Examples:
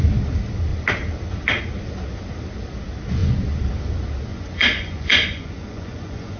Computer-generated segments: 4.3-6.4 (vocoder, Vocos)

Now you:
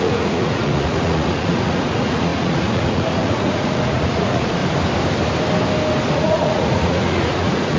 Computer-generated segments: 0.0-4.6 (vocoder, Vocos); 6.1-7.8

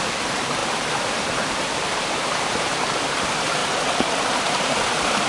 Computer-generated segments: 0.0-3.6 (vocoder, BigVGAN v2); 4.3-5.3

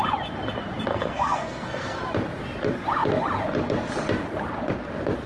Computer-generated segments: 0.9-2.0 (codec, SNAC)

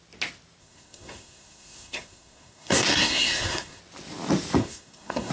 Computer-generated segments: 0.6-3.8 (codec, SNAC); 4.6-5.3

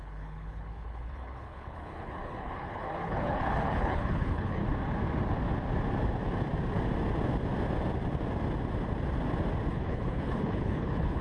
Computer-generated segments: 0.0-4.6 (codec, HILCodec); 9.7-11.2

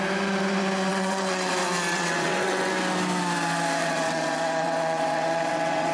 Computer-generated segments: 0.9-1.5 (vocoder, WaveNeXt); 1.9-2.7; 3.8-5.9